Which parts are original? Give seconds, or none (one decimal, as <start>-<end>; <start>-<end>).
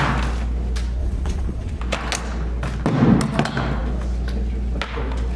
0.0-1.0; 1.8-5.4